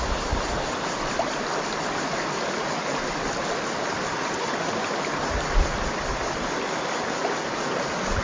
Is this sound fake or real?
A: real